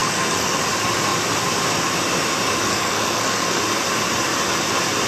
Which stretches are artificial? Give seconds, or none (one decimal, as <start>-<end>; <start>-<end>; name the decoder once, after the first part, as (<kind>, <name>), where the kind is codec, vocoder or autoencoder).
0.0-0.6 (codec, SNAC); 2.7-3.6